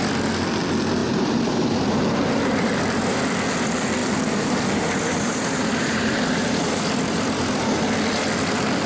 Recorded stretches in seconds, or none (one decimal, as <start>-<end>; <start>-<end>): 0.0-1.0; 3.2-4.0; 7.8-8.9